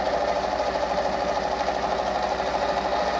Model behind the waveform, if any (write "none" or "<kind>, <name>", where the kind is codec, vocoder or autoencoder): none